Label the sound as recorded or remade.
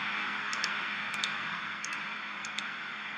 remade